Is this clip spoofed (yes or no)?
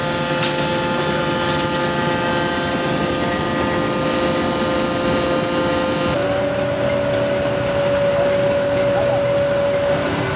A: no